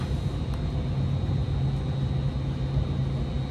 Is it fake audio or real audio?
real